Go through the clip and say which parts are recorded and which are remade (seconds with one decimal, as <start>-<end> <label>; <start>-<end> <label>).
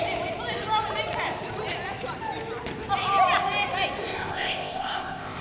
0.0-4.0 recorded; 4.0-5.4 remade